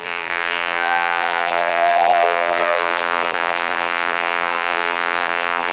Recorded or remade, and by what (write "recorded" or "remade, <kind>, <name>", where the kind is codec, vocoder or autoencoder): remade, vocoder, BigVGAN v2